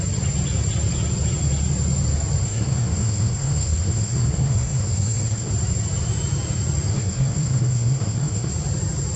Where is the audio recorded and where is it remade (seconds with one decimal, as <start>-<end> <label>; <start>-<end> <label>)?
0.0-2.4 recorded; 2.4-5.5 remade; 5.5-6.9 recorded; 6.9-8.5 remade; 8.5-9.2 recorded